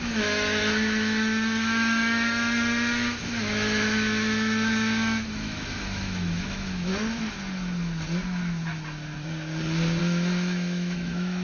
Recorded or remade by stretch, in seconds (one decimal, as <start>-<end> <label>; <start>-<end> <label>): 0.0-6.9 remade; 6.9-10.0 recorded; 10.0-11.4 remade